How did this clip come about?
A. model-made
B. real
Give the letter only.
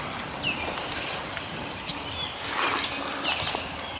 B